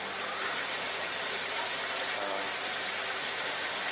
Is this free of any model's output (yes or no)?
yes